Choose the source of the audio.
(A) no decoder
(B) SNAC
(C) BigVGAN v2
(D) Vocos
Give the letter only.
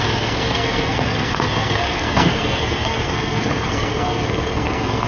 B